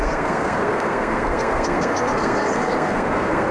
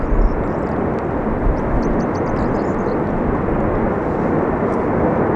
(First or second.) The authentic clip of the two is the second